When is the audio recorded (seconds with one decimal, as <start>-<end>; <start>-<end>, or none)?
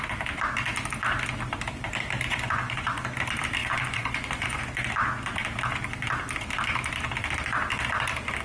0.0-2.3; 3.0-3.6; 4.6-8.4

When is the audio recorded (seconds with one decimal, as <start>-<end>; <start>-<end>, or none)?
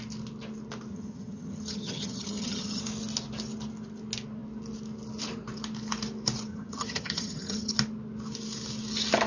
0.0-0.9; 2.8-6.5; 7.7-9.3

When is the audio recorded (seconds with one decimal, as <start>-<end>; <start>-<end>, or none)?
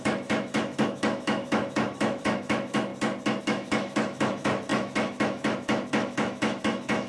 2.9-3.4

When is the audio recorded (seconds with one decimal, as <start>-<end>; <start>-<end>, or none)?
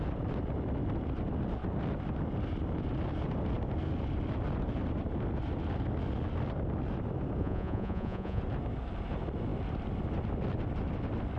0.0-7.4; 8.4-11.4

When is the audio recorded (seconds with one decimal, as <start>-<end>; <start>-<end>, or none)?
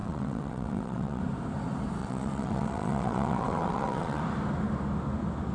1.2-2.0; 4.2-5.5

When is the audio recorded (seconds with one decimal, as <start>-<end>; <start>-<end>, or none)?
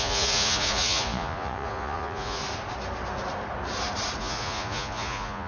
2.4-4.2